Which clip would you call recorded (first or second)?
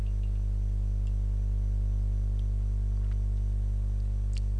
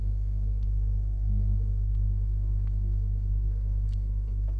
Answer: first